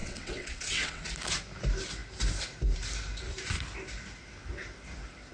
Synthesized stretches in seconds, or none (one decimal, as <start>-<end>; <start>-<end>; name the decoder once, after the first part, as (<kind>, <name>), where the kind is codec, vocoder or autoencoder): 0.0-1.0 (vocoder, WaveNeXt)